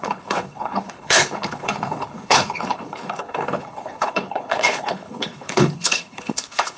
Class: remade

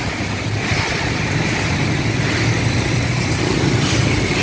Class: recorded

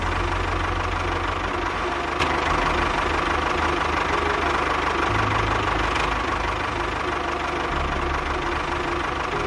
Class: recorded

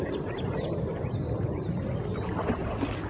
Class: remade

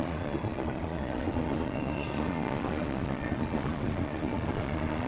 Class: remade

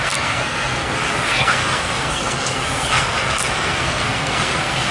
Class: remade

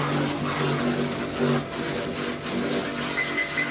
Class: recorded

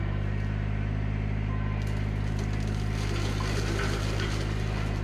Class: recorded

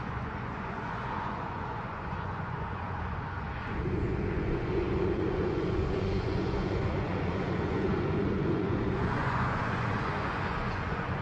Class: remade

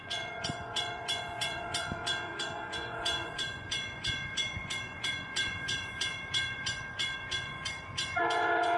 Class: remade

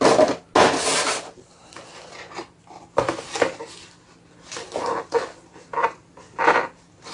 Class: recorded